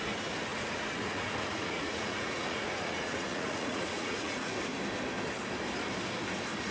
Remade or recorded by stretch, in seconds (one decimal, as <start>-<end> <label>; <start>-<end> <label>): 0.0-0.5 recorded; 0.5-4.5 remade; 4.5-6.7 recorded